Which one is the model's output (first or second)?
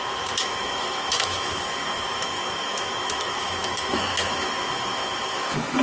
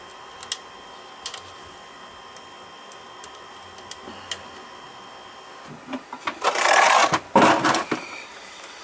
first